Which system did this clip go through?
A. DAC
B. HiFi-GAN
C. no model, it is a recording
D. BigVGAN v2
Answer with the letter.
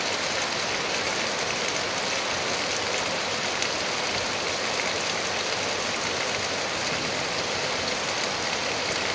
D